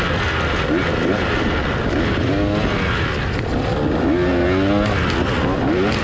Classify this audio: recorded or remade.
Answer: recorded